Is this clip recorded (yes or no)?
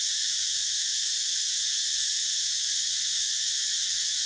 no